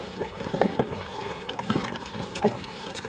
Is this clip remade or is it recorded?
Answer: remade